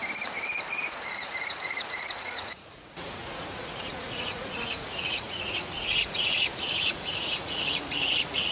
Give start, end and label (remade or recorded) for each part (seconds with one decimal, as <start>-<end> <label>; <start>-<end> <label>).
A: 0.0-0.9 recorded; 0.9-8.5 remade